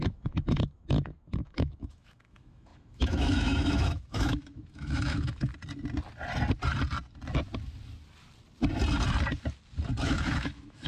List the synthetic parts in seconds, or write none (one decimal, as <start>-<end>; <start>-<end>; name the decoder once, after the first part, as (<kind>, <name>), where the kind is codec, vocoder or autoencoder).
0.0-5.5 (autoencoder, DAC-VAE); 10.0-10.9